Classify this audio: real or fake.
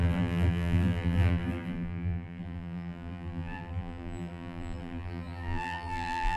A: fake